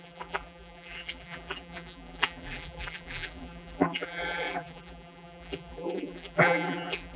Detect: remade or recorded remade